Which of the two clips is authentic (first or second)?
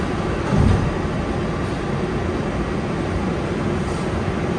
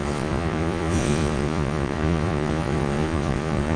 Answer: first